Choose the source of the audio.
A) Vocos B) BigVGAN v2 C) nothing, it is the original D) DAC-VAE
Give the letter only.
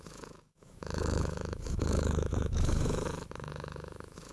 D